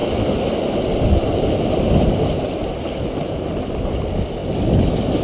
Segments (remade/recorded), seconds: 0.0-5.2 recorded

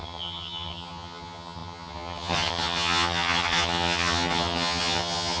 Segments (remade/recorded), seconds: 0.0-5.4 remade

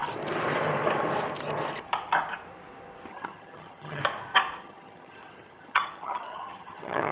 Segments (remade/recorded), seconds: 0.0-3.1 recorded; 3.1-4.0 remade; 4.0-4.6 recorded; 4.6-7.1 remade

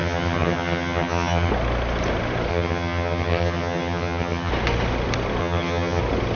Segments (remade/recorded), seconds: 0.0-1.5 remade; 1.5-2.5 recorded; 2.5-4.5 remade; 4.5-5.4 recorded; 5.4-6.0 remade; 6.0-6.4 recorded

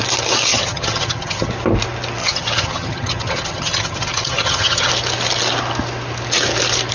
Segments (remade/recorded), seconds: 0.0-0.5 recorded; 0.5-1.5 remade; 1.5-2.2 recorded; 2.2-4.9 remade; 4.9-6.9 recorded

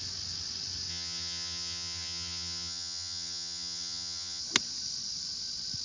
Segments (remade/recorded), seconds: 0.0-0.9 recorded; 0.9-4.4 remade; 4.4-5.8 recorded